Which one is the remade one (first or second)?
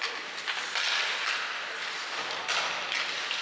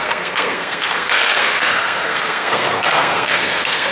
second